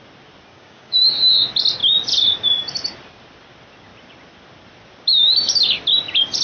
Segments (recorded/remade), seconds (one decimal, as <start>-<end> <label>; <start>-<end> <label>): 0.0-0.5 recorded; 0.5-1.1 remade; 1.1-6.4 recorded